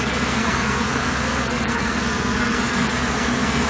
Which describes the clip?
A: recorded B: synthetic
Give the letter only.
B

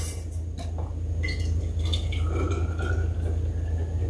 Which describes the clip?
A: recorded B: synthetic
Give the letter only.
A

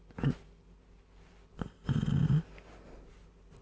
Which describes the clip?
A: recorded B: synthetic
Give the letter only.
A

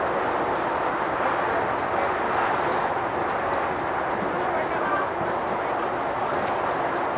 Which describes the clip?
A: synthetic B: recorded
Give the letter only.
B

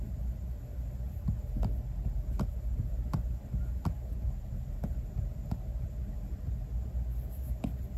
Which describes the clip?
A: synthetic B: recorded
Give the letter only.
B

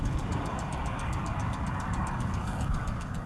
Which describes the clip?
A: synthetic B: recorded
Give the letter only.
A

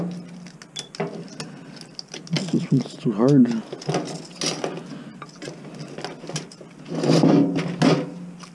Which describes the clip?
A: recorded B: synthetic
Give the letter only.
A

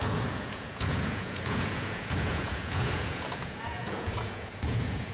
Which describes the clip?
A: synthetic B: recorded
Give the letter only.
A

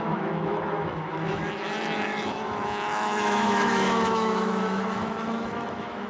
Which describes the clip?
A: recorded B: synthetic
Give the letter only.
B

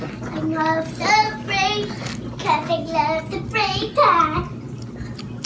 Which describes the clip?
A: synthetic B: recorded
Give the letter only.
B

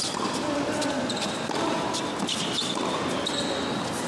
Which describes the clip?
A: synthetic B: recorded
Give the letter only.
B